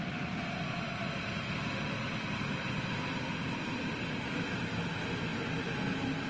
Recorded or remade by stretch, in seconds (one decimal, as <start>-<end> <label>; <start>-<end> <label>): 0.0-6.3 recorded